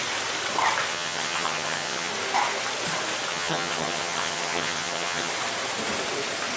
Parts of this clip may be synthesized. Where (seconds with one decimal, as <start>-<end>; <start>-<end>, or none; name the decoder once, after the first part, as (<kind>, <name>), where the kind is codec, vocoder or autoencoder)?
0.9-2.1 (vocoder, HiFi-GAN); 3.3-5.3